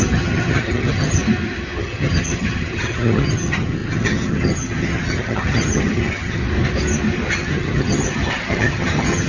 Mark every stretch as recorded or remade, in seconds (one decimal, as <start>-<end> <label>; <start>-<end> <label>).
0.0-1.2 remade; 1.2-1.8 recorded; 1.8-6.4 remade; 6.4-7.3 recorded; 7.3-9.3 remade